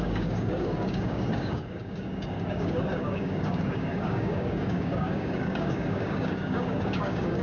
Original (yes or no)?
no